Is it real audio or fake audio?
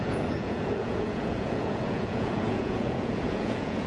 fake